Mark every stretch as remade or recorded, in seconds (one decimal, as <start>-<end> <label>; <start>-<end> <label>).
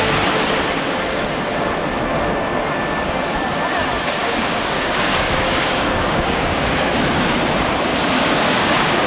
0.0-4.2 recorded; 4.2-7.0 remade; 7.0-7.9 recorded; 7.9-9.1 remade